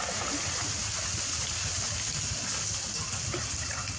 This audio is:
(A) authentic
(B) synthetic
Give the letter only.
A